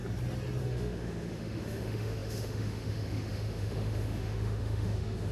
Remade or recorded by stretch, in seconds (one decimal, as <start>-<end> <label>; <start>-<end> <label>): 0.0-0.6 recorded; 0.6-5.3 remade